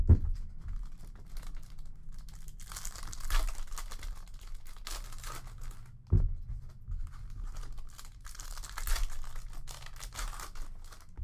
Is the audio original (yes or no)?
yes